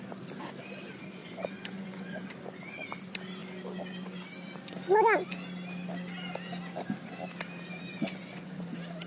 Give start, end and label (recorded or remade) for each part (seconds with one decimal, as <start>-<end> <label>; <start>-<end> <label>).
0.0-1.2 recorded; 1.2-2.2 remade; 2.2-7.9 recorded; 7.9-8.6 remade; 8.6-9.1 recorded